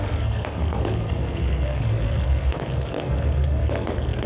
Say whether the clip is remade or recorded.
remade